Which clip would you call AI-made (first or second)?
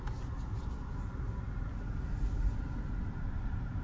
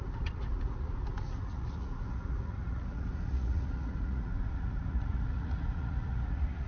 second